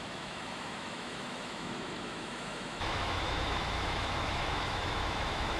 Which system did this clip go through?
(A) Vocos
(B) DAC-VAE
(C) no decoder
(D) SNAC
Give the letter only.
B